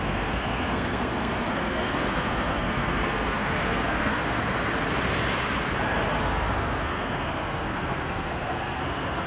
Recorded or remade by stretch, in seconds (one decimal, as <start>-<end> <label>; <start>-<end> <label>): 0.0-4.4 remade; 4.4-6.2 recorded; 6.2-9.3 remade